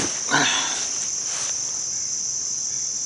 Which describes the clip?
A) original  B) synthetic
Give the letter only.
A